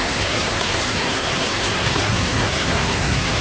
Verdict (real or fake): fake